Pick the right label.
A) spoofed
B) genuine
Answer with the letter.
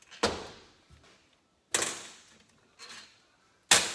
B